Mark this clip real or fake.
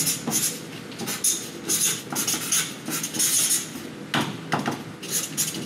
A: real